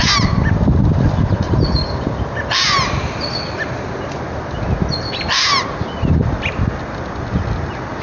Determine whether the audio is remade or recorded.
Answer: recorded